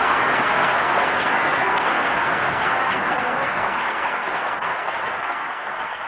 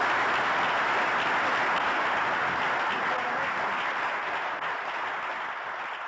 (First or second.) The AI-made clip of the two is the first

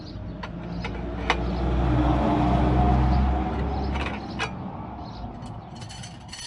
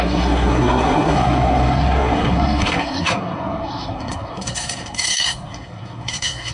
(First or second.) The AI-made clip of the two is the second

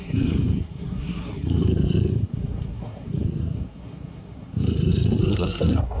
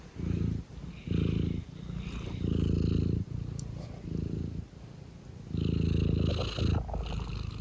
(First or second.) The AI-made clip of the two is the first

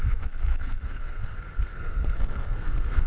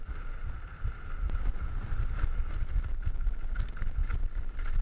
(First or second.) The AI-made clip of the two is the first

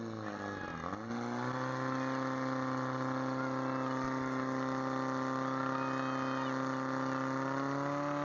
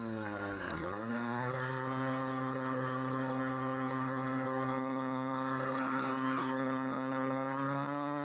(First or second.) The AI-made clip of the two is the second